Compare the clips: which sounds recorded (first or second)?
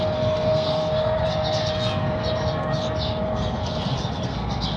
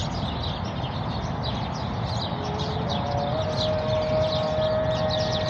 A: second